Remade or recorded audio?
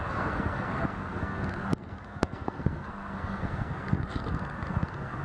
remade